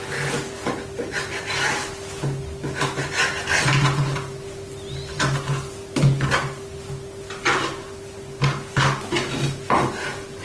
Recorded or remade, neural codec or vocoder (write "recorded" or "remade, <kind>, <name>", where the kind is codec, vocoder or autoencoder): recorded